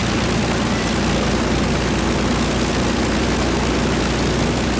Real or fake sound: real